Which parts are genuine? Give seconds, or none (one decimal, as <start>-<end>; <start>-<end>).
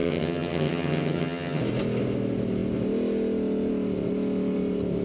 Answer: 1.6-5.0